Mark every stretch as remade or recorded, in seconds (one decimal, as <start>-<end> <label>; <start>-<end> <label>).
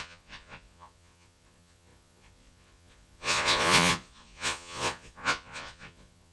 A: 0.0-6.3 remade